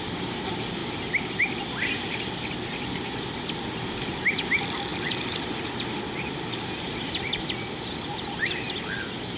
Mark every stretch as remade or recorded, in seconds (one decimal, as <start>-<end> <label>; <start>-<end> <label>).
0.0-9.4 recorded